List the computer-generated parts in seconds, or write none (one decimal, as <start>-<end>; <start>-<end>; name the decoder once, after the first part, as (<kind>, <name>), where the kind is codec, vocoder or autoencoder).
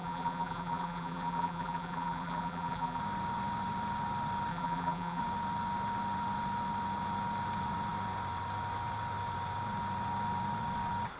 0.0-3.0 (vocoder, BigVGAN v2); 4.5-5.2